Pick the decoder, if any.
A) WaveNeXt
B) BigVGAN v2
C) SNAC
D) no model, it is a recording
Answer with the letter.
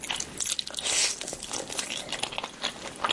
D